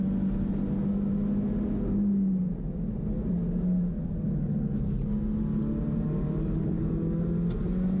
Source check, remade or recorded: recorded